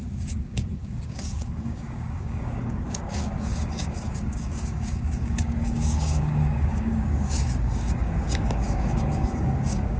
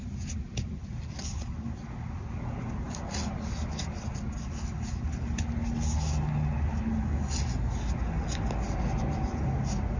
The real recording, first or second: second